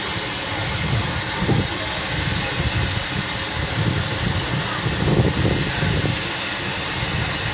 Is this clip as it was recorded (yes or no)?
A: yes